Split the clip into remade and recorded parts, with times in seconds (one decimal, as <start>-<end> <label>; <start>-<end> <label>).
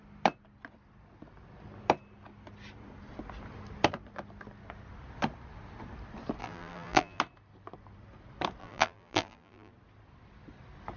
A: 0.0-6.4 recorded; 6.4-7.2 remade; 7.2-8.6 recorded; 8.6-9.7 remade; 9.7-11.0 recorded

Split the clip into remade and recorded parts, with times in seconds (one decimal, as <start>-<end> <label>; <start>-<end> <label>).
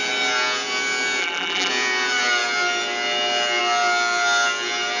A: 0.0-1.2 recorded; 1.2-1.7 remade; 1.7-5.0 recorded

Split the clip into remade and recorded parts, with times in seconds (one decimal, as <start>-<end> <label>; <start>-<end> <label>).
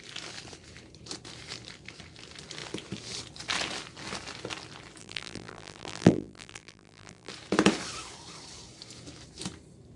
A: 0.0-5.0 recorded; 5.0-7.3 remade; 7.3-10.0 recorded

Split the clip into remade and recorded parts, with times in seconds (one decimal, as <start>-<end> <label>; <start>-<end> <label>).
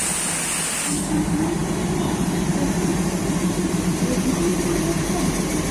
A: 0.0-0.9 recorded; 0.9-2.9 remade; 2.9-3.8 recorded; 3.8-4.5 remade; 4.5-5.1 recorded; 5.1-5.7 remade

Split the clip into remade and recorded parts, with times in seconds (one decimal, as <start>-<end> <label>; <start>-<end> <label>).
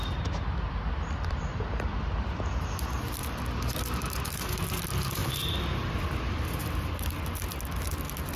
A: 0.0-0.4 recorded; 0.4-2.7 remade; 2.7-3.2 recorded; 3.2-4.6 remade; 4.6-5.2 recorded; 5.2-6.7 remade; 6.7-8.4 recorded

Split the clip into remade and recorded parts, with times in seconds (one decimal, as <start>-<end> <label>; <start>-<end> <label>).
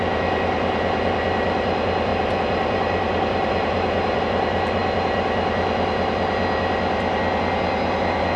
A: 0.0-2.1 recorded; 2.1-4.2 remade; 4.2-8.4 recorded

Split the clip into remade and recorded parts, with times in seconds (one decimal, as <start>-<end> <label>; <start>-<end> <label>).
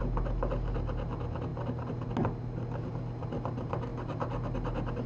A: 0.0-5.1 recorded